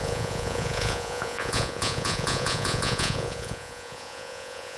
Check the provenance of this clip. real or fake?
fake